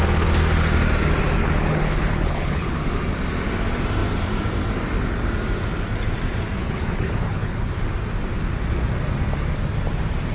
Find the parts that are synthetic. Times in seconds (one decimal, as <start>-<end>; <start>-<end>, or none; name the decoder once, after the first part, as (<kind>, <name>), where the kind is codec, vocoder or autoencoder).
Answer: 1.4-2.9 (codec, HILCodec); 6.6-7.7

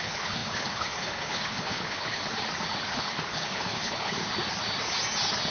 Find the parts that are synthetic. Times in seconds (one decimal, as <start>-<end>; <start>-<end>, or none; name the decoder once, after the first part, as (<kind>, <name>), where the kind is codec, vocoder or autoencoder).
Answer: 0.0-2.2 (codec, HILCodec); 2.9-4.2

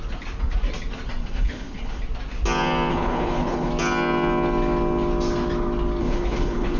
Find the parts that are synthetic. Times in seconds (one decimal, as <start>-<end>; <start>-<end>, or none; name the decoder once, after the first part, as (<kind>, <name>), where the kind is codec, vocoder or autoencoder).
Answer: 1.2-2.0 (codec, HILCodec); 2.9-3.7; 6.0-6.8